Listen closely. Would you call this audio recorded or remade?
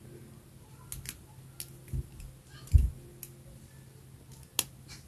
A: recorded